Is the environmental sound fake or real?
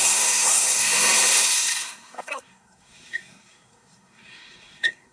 fake